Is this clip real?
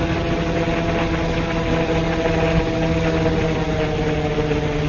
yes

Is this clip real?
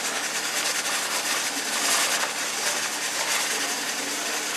yes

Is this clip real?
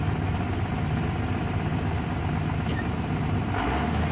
yes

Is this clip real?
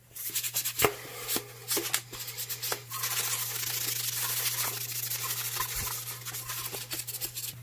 yes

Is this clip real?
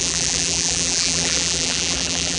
no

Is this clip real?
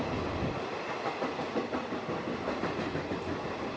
yes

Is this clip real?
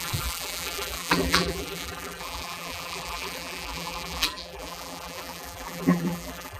no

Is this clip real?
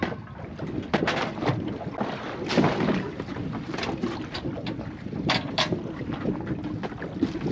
yes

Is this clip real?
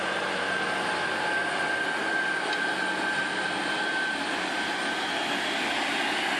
yes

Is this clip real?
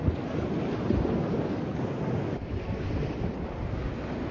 yes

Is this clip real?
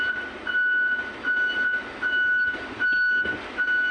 yes